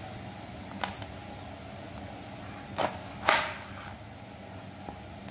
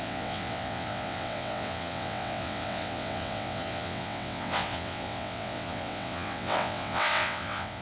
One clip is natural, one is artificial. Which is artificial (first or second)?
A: second